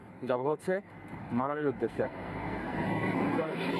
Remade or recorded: remade